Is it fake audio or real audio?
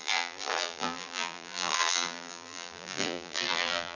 fake